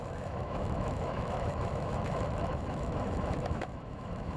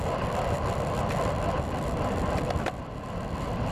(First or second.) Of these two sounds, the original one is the second